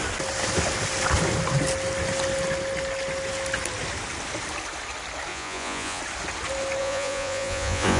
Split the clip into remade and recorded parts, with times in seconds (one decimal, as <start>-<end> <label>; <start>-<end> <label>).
0.0-5.3 recorded; 5.3-6.0 remade; 6.0-6.8 recorded; 6.8-8.0 remade